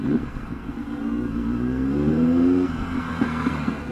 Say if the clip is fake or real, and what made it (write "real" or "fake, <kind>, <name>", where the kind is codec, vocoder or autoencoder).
fake, codec, SNAC